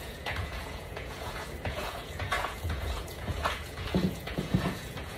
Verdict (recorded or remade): remade